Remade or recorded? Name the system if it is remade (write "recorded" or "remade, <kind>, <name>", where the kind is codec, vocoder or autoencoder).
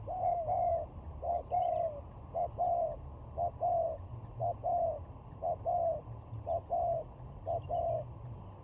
recorded